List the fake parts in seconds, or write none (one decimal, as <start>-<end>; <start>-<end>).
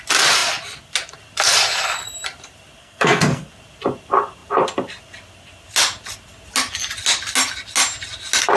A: 2.8-3.5